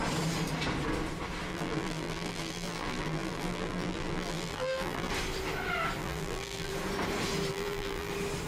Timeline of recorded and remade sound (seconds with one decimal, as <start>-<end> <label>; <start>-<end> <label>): 0.0-1.5 recorded; 1.5-5.1 remade; 5.1-6.0 recorded; 6.0-6.7 remade; 6.7-7.5 recorded; 7.5-8.1 remade; 8.1-8.5 recorded